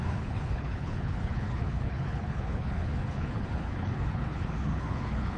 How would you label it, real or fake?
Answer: fake